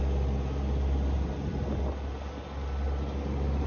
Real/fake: real